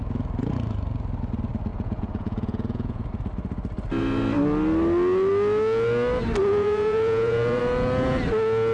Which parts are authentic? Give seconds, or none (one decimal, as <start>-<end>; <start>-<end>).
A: 0.0-1.7; 3.1-6.4; 7.6-8.7